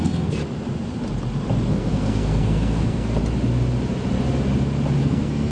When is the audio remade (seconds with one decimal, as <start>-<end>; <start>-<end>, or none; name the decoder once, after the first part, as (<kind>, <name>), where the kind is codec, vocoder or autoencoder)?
0.0-0.4 (codec, SNAC); 1.7-3.2; 5.0-5.5